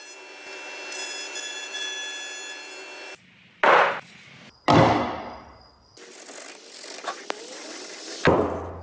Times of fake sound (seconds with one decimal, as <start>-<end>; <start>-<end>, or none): none